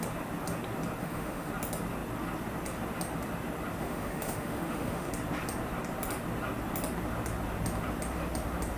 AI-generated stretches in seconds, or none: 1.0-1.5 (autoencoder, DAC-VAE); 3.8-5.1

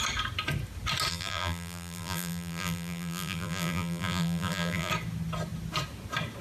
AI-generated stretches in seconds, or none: 1.1-4.9 (vocoder, BigVGAN v2)

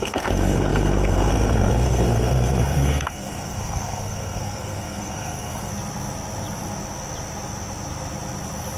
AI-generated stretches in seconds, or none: 0.0-5.7 (codec, SNAC)

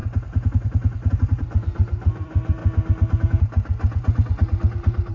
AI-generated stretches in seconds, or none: 1.1-2.6 (vocoder, BigVGAN v2)